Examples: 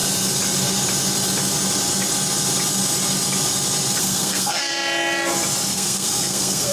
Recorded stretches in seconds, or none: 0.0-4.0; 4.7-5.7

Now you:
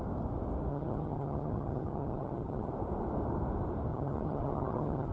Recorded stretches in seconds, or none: 0.0-0.7; 2.7-3.9

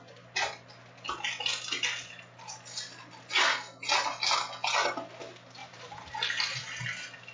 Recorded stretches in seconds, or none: 0.0-5.6; 6.4-7.3

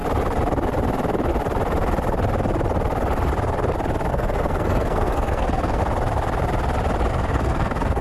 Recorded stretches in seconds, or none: 0.0-4.1; 5.8-7.1